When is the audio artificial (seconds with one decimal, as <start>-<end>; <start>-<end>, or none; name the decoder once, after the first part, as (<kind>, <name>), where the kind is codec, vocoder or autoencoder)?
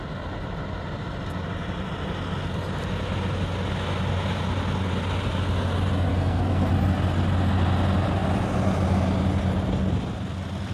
6.1-6.7 (codec, SNAC)